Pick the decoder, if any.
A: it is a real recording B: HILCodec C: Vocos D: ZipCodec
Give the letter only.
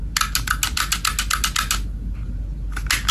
A